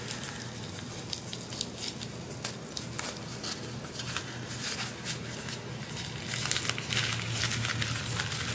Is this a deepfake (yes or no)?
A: no